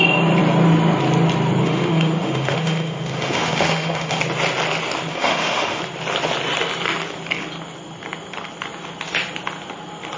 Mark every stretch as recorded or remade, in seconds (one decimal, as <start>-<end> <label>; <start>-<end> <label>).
0.0-1.6 recorded; 1.6-4.2 remade; 4.2-5.1 recorded; 5.1-5.8 remade; 5.8-10.2 recorded